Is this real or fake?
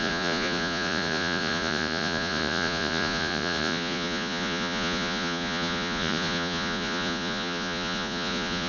fake